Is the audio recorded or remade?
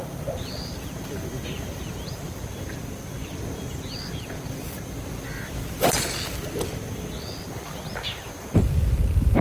remade